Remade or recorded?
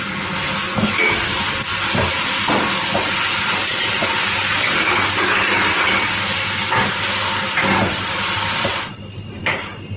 recorded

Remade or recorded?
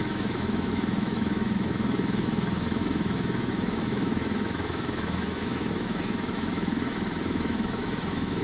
remade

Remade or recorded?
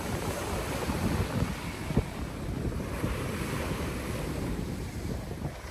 recorded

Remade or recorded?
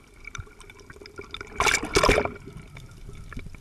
recorded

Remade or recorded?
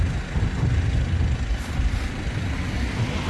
recorded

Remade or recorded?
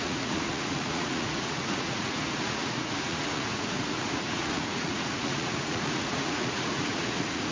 remade